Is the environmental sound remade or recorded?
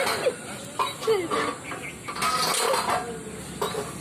recorded